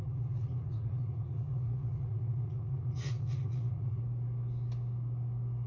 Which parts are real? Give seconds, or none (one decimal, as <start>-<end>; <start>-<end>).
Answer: 4.0-5.7